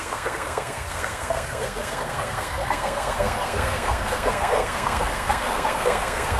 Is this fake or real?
fake